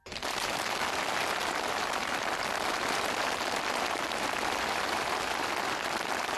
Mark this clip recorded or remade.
remade